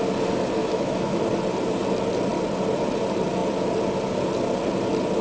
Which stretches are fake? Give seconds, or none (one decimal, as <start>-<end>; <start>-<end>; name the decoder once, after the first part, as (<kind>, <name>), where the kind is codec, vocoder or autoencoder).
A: 0.6-1.2 (autoencoder, DAC-VAE)